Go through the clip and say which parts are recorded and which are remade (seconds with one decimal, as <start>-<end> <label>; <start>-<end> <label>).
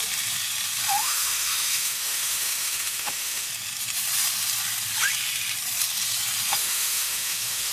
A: 0.0-1.0 recorded; 1.0-3.5 remade; 3.5-6.6 recorded; 6.6-7.7 remade